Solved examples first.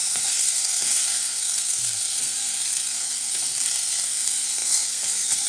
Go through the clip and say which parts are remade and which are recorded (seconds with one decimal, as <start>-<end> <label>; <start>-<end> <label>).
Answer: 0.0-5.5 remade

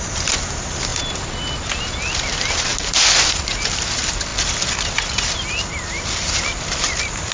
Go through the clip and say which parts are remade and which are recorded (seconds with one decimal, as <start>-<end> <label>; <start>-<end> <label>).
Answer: 0.0-0.9 remade; 0.9-2.2 recorded; 2.2-2.7 remade; 2.7-3.4 recorded; 3.4-7.3 remade

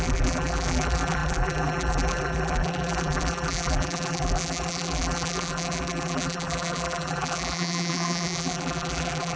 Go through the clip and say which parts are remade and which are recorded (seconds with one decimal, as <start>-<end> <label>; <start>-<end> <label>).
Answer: 0.0-9.4 remade

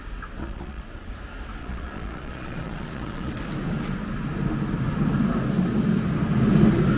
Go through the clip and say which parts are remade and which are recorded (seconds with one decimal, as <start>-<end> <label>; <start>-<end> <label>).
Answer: 0.0-0.4 recorded; 0.4-1.1 remade; 1.1-1.6 recorded; 1.6-3.3 remade; 3.3-7.0 recorded